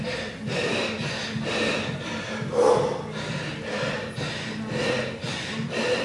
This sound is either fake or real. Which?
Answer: real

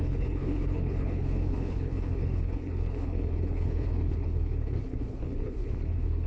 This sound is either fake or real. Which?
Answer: fake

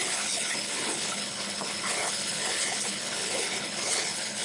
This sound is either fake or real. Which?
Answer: fake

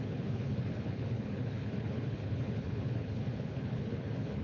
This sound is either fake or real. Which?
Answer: fake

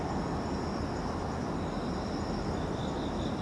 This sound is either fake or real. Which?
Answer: real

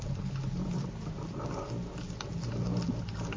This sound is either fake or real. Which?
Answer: real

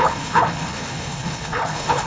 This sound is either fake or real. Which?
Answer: fake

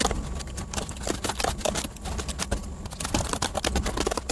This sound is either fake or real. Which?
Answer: real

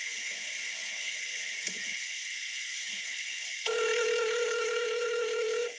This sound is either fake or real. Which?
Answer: fake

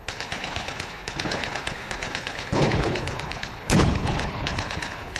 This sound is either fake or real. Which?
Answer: fake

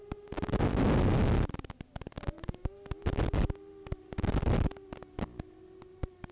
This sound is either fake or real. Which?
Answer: real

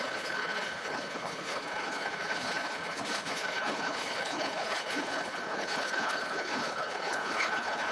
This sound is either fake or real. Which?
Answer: fake